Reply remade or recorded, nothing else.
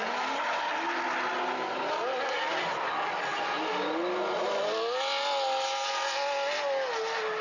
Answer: recorded